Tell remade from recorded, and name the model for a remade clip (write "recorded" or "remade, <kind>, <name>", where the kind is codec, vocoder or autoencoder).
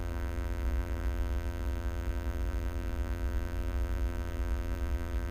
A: remade, vocoder, BigVGAN v2